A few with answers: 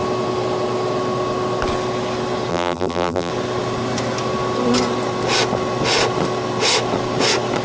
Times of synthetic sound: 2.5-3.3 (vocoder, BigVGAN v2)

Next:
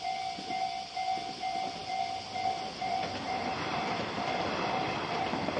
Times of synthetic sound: 1.8-5.6 (vocoder, BigVGAN v2)